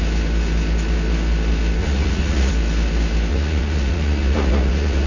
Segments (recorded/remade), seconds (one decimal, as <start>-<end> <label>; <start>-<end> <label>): 0.0-1.8 recorded; 1.8-2.5 remade; 2.5-3.3 recorded; 3.3-5.1 remade

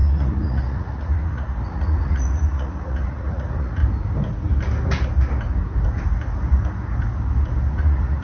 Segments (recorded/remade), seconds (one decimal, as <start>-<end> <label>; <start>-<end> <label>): 0.0-3.8 remade; 3.8-7.7 recorded; 7.7-8.2 remade

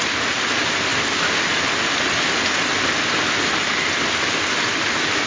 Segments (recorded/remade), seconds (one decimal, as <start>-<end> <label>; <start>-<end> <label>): 0.0-5.3 recorded

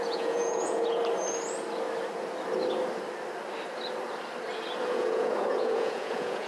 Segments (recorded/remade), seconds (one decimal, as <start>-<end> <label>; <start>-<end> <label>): 0.0-1.0 remade; 1.0-4.9 recorded; 4.9-6.5 remade